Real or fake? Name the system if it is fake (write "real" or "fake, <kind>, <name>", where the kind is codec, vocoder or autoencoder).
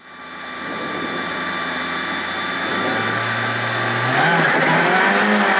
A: real